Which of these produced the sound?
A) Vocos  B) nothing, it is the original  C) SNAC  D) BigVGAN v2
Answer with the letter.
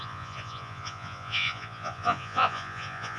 A